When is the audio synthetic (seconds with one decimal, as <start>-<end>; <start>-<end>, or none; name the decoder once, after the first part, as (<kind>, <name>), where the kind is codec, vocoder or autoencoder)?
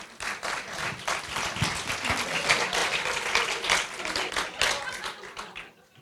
none